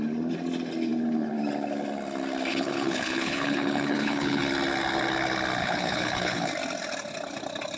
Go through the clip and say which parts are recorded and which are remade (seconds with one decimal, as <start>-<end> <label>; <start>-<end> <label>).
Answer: 0.0-2.5 recorded; 2.5-4.4 remade; 4.4-5.6 recorded; 5.6-6.5 remade; 6.5-7.8 recorded